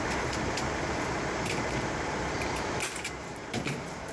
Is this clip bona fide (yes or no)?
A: no